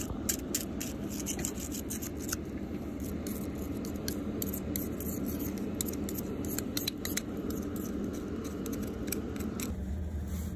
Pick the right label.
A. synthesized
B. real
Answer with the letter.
B